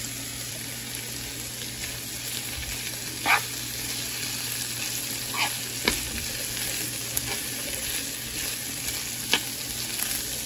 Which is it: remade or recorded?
recorded